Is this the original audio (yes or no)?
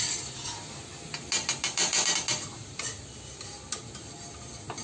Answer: yes